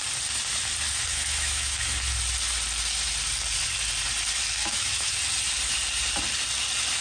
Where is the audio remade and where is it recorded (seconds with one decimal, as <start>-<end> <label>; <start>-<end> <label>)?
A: 0.0-1.1 recorded; 1.1-2.0 remade; 2.0-4.6 recorded; 4.6-5.1 remade; 5.1-7.0 recorded